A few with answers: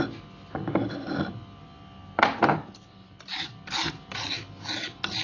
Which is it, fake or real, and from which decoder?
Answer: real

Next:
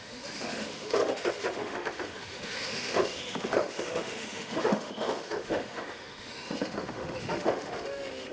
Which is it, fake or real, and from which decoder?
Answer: fake, autoencoder, DAC-VAE